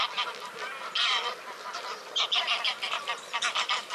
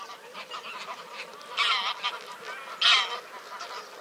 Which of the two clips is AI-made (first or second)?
first